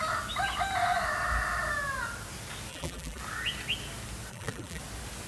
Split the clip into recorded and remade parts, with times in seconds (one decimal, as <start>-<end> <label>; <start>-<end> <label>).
0.0-2.7 recorded; 2.7-3.2 remade; 3.2-4.3 recorded; 4.3-4.8 remade; 4.8-5.3 recorded